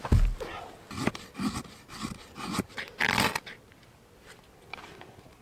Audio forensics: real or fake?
real